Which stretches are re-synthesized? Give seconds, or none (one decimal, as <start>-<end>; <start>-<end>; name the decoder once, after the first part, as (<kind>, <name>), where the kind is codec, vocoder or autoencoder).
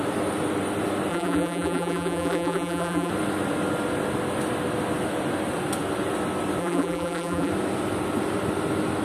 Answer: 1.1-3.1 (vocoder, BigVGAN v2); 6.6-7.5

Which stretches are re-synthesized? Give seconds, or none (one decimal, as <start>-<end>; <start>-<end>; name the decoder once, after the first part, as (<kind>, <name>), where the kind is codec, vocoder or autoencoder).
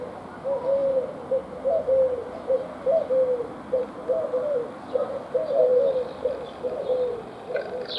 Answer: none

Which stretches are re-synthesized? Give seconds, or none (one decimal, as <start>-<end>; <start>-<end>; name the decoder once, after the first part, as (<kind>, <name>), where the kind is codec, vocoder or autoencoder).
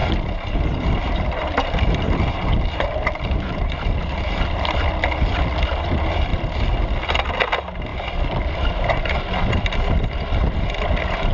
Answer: 0.0-4.9 (vocoder, BigVGAN v2); 6.3-6.8